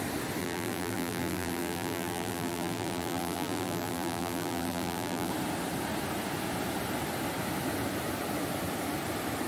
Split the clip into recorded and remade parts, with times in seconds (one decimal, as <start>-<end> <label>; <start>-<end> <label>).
0.0-0.4 recorded; 0.4-5.3 remade; 5.3-9.5 recorded